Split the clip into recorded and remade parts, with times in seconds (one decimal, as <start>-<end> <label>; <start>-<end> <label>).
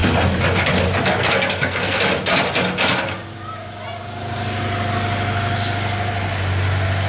0.0-1.1 recorded; 1.1-2.0 remade; 2.0-7.1 recorded